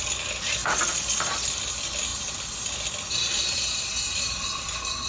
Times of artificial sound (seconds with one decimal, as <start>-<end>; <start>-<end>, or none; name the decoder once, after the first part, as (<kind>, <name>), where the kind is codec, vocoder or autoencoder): none